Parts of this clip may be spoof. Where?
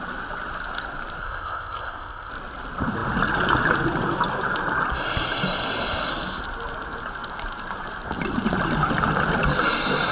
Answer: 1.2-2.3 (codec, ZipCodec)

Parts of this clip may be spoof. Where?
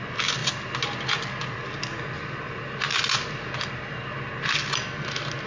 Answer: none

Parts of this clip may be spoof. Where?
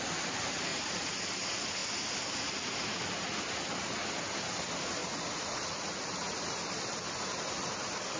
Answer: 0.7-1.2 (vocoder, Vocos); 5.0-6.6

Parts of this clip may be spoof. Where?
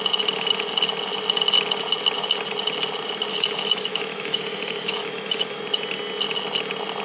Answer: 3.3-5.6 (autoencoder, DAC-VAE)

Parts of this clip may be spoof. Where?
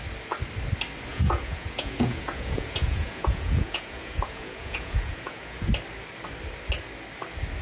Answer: 1.1-5.7 (vocoder, Vocos)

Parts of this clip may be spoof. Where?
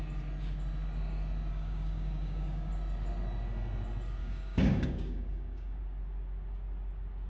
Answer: 1.5-2.7 (codec, DAC); 4.2-5.8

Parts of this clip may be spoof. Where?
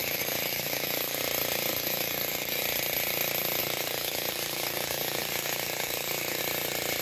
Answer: 0.0-1.2 (codec, DAC); 1.7-2.6; 3.6-6.4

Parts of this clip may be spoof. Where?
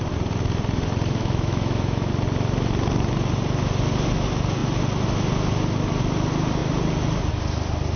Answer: 1.2-2.1 (autoencoder, DAC-VAE)